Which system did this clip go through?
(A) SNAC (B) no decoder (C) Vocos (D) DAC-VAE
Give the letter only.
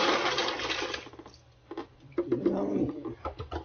B